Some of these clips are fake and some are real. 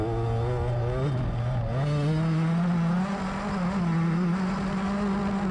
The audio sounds real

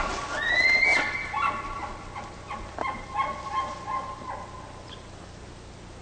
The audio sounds real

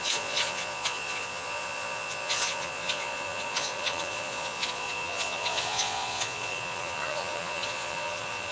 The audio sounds fake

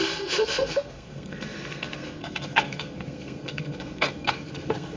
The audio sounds fake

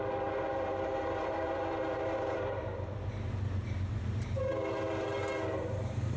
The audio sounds fake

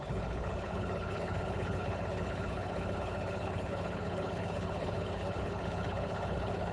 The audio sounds fake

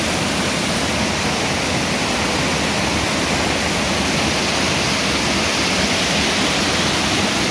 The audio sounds real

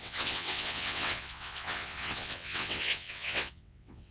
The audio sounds fake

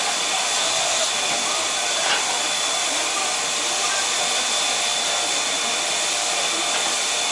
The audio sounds fake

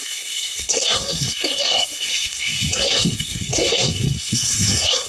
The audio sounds fake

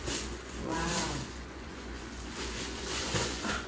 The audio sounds fake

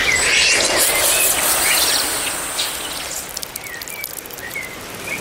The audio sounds real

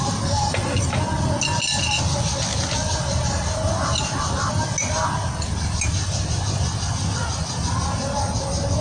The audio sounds real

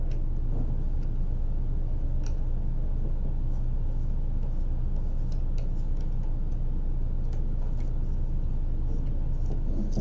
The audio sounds real